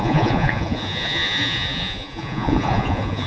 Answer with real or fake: fake